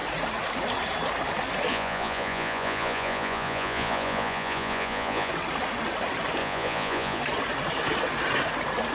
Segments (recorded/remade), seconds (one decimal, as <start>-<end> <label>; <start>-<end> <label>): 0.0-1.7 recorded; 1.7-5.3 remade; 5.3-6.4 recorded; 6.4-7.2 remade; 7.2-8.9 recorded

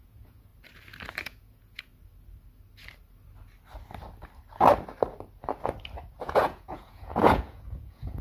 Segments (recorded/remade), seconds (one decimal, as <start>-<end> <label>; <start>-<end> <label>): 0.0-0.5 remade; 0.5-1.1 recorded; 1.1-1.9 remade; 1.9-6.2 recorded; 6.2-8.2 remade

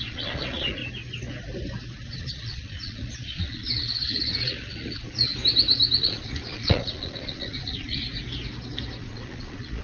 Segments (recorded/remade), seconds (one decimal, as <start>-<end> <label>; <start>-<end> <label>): 0.0-0.8 remade; 0.8-2.2 recorded; 2.2-5.3 remade; 5.3-6.0 recorded; 6.0-8.0 remade; 8.0-9.0 recorded; 9.0-9.8 remade

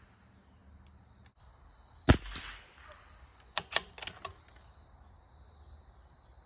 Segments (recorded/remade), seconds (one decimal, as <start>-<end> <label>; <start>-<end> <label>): 0.0-3.3 recorded; 3.3-3.9 remade; 3.9-6.5 recorded

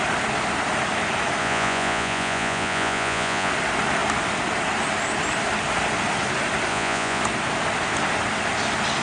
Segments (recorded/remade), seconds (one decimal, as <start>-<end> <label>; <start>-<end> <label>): 0.0-1.4 recorded; 1.4-3.5 remade; 3.5-6.7 recorded; 6.7-7.2 remade; 7.2-9.0 recorded

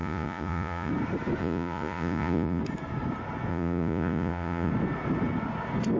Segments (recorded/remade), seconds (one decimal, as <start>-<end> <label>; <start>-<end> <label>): 0.0-0.9 remade; 0.9-1.4 recorded; 1.4-2.6 remade; 2.6-3.5 recorded; 3.5-4.7 remade; 4.7-6.0 recorded

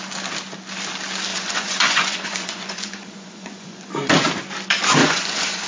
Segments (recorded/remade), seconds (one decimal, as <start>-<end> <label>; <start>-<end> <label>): 0.0-1.3 recorded; 1.3-3.9 remade; 3.9-5.0 recorded; 5.0-5.7 remade

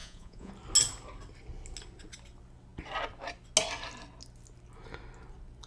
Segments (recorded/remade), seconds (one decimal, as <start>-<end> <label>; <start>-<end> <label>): 0.0-0.5 remade; 0.5-5.7 recorded